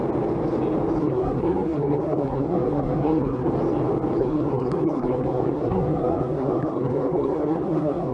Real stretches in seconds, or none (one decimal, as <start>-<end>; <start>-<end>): 0.0-1.0; 3.5-4.2